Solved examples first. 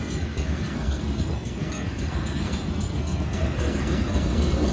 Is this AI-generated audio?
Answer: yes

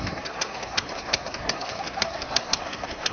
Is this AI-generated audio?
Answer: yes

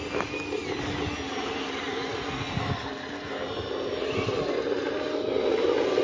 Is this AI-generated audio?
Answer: no